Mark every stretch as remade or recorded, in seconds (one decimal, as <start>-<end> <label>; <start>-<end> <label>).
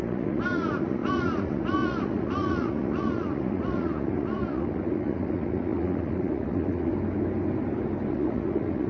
0.0-6.9 remade; 6.9-8.1 recorded; 8.1-8.9 remade